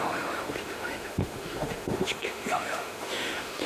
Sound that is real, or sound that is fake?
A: fake